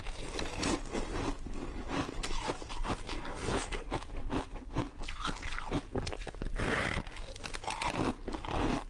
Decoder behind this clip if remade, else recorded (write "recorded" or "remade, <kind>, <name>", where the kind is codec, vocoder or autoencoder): recorded